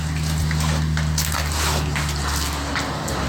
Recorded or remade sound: recorded